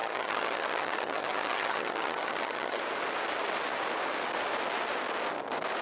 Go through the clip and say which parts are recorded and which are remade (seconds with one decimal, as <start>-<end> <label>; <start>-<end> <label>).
0.0-2.8 remade; 2.8-5.8 recorded